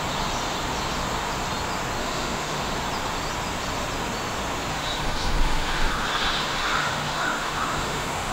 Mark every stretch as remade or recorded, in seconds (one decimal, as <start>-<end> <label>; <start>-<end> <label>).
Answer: 0.0-2.0 recorded; 2.0-2.7 remade; 2.7-4.7 recorded; 4.7-8.3 remade